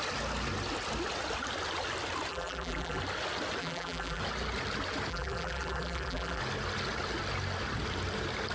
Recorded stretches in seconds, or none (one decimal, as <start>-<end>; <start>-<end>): 0.0-2.3; 3.0-3.6; 4.2-5.1; 6.4-8.5